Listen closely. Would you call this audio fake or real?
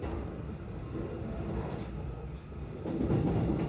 real